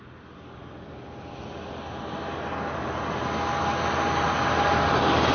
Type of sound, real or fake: real